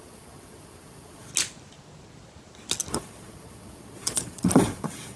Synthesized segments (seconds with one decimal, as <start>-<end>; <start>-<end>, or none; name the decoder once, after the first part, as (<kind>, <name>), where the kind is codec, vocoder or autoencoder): 0.0-1.3 (vocoder, Vocos); 2.9-5.2